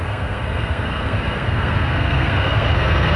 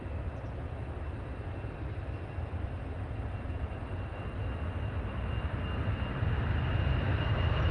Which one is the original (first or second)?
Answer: second